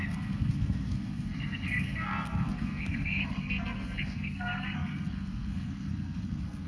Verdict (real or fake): fake